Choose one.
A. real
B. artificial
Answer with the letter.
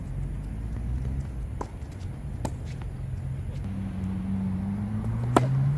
A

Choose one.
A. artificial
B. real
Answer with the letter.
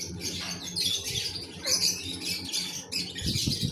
B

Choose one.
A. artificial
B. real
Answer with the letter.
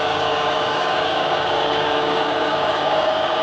A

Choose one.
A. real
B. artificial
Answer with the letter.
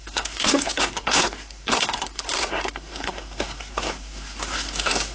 B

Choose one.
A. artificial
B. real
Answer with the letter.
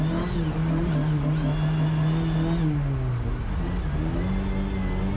B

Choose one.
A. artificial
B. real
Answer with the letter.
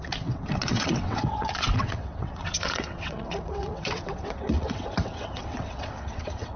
A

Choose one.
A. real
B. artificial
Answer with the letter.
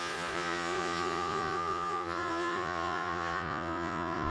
B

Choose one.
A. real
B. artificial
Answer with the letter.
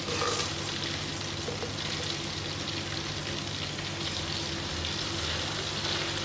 A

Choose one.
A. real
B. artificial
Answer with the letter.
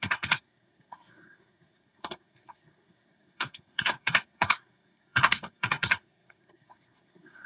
B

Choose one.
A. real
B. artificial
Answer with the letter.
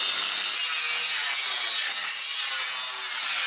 A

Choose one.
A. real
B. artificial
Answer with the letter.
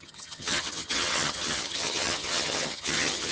B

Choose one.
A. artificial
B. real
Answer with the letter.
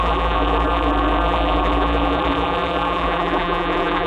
A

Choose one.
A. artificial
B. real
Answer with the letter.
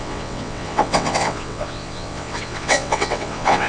A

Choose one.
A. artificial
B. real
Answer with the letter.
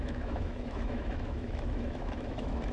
A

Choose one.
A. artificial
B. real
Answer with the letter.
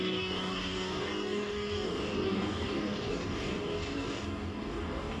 A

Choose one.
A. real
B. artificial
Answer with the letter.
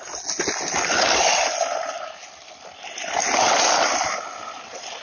A